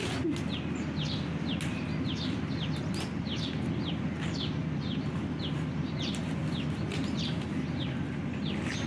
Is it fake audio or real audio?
real